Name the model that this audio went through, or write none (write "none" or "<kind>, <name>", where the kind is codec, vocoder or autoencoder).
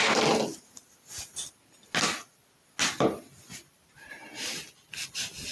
none